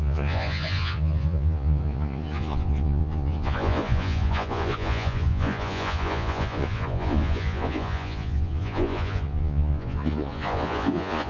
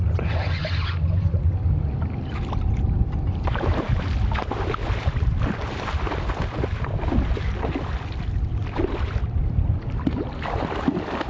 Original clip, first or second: second